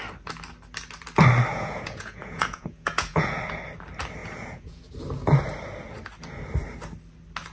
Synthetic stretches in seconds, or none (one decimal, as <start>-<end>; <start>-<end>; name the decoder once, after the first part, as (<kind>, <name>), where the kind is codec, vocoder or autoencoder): 1.5-3.4 (vocoder, Vocos); 4.2-4.8